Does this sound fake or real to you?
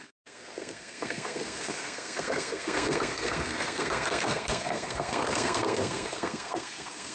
fake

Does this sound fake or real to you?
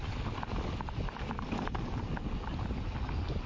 real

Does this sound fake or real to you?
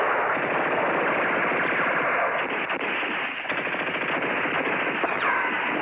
real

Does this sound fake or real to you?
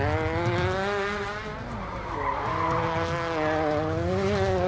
real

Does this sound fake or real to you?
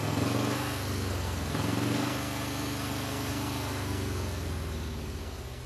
fake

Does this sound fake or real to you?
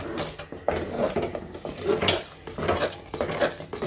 real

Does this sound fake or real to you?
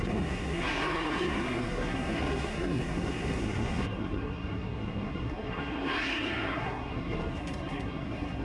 fake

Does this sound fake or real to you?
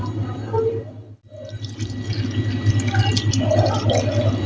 real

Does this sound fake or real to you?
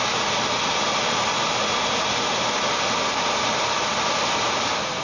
real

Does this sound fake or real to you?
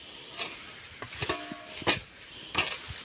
real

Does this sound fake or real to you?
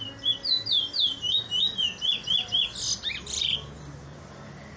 real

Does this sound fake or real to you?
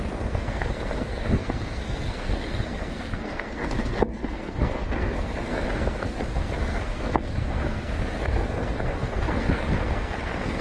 fake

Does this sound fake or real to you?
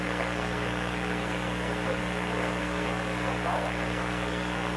fake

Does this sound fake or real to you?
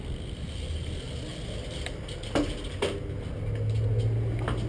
real